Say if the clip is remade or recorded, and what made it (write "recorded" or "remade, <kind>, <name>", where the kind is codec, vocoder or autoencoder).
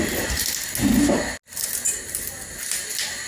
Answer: recorded